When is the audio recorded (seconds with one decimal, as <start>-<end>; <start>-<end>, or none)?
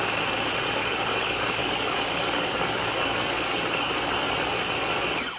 0.0-0.8; 3.9-5.4